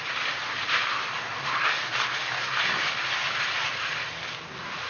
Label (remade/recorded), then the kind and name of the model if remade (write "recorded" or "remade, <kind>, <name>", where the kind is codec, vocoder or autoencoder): recorded